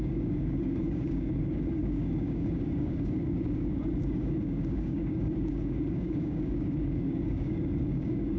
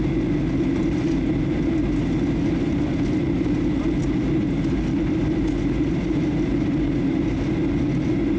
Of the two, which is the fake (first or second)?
first